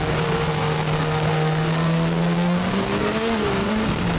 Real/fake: fake